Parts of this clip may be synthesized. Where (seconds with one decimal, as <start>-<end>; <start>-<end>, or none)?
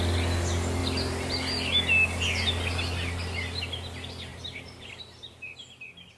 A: 4.3-4.9